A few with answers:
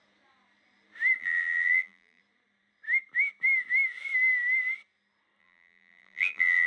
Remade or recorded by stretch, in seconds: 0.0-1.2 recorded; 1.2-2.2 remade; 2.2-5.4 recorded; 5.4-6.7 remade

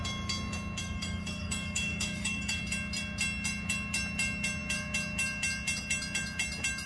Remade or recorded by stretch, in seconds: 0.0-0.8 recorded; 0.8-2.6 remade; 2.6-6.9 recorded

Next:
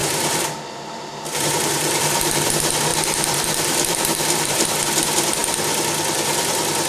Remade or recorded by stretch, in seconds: 0.0-2.5 remade; 2.5-2.9 recorded; 2.9-4.8 remade; 4.8-6.9 recorded

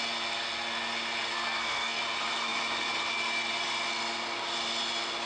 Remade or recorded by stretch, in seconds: 0.0-1.3 recorded; 1.3-2.0 remade; 2.0-5.3 recorded

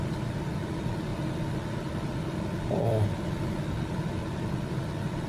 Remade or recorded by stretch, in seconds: 0.0-1.1 remade; 1.1-1.9 recorded; 1.9-5.3 remade

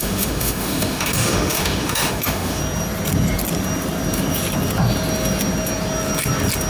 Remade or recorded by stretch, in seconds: 0.0-2.6 remade; 2.6-6.7 recorded

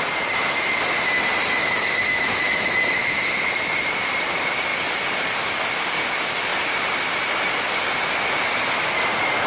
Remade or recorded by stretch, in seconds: 0.0-1.6 recorded; 1.6-3.2 remade; 3.2-9.5 recorded

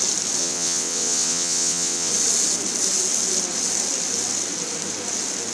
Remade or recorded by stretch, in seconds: 0.0-0.4 recorded; 0.4-2.1 remade; 2.1-5.5 recorded